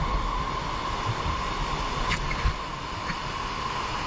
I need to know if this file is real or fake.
real